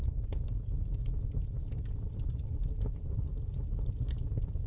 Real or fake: real